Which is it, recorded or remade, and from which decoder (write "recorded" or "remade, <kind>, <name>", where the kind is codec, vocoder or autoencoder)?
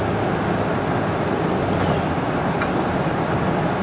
recorded